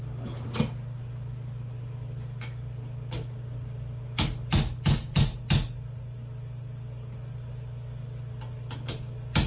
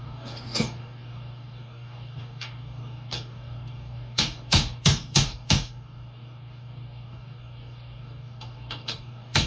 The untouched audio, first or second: first